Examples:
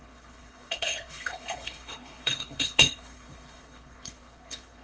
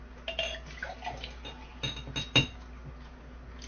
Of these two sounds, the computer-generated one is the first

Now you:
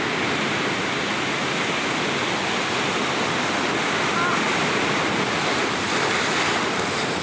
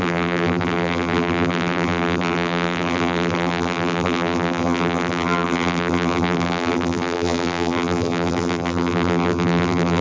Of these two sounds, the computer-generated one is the second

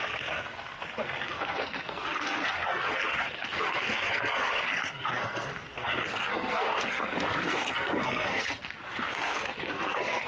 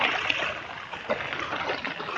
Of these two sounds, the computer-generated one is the first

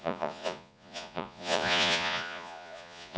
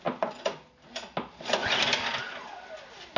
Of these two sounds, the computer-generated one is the first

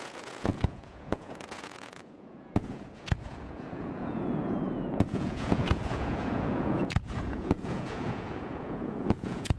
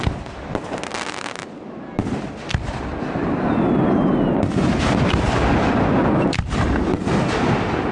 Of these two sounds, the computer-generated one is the first